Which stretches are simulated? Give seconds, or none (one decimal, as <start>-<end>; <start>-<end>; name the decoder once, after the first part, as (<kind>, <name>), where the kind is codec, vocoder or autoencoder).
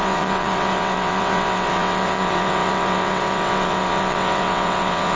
0.0-5.2 (vocoder, WaveNeXt)